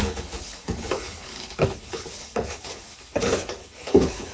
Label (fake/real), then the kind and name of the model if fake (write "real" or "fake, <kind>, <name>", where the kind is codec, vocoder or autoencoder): fake, codec, HILCodec